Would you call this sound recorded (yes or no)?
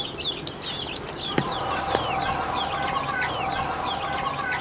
yes